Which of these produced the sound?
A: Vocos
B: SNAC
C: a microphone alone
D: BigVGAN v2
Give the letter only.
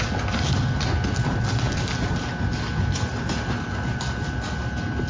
C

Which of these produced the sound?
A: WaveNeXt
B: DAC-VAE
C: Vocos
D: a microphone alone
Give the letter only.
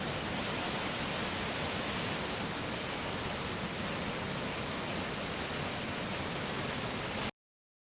D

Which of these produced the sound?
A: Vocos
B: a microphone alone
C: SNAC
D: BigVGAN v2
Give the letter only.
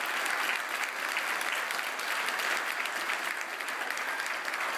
B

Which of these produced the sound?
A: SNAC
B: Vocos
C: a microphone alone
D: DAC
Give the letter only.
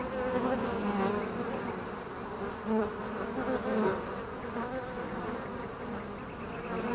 C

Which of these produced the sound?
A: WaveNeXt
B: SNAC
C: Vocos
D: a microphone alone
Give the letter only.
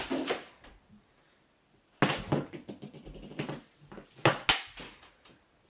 D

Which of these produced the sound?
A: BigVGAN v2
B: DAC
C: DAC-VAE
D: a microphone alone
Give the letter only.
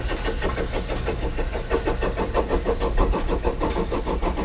D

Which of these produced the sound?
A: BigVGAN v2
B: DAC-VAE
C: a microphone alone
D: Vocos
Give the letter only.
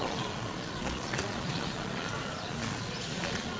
D